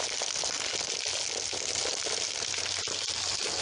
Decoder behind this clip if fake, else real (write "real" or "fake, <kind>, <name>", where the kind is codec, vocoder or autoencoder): real